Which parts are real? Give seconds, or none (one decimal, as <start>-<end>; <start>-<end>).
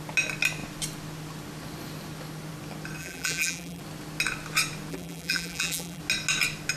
0.0-3.0; 3.8-4.9; 6.0-6.8